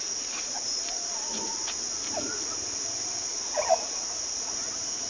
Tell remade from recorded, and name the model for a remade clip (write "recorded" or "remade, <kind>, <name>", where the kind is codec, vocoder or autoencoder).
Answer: remade, vocoder, Vocos